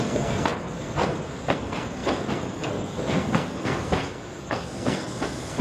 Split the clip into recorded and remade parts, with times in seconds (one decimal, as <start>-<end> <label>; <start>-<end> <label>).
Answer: 0.0-5.6 remade